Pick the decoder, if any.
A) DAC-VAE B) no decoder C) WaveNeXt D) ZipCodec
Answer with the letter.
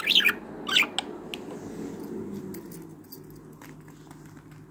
B